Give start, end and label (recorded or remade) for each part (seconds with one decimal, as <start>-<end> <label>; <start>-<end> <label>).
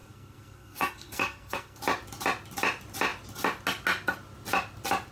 0.0-1.8 remade; 1.8-5.1 recorded